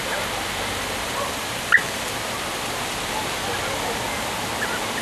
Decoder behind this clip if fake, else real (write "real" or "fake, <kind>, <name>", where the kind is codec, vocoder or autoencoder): real